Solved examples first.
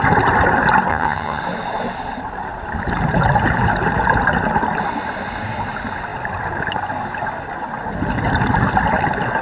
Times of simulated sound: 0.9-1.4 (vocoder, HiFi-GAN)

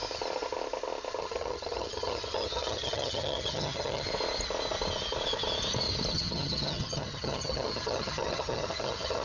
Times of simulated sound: 1.2-4.1 (vocoder, HiFi-GAN); 6.1-9.2

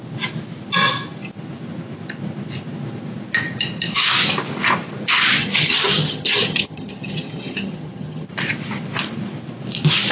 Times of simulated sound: 5.4-8.3 (vocoder, HiFi-GAN)